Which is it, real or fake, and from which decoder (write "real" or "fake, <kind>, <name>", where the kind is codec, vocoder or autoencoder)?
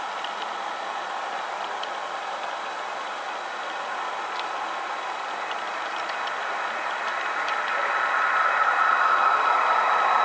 real